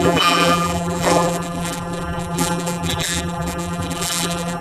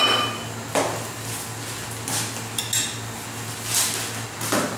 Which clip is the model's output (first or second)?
first